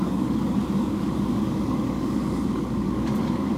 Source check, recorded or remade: remade